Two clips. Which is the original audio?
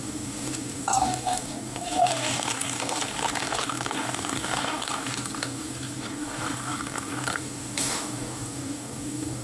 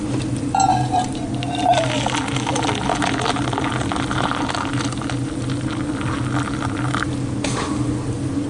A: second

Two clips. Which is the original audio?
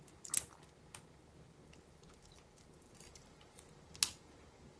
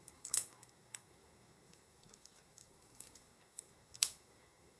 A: first